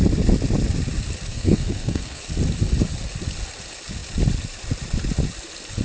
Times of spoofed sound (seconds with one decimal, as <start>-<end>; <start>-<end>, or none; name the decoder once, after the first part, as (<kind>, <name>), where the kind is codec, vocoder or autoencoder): 1.3-2.2 (codec, SNAC)